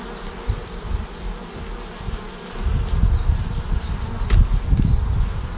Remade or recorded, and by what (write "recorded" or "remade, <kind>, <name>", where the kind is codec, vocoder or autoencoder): recorded